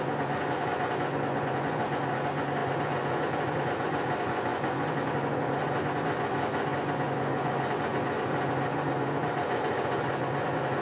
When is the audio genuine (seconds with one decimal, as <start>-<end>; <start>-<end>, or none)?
none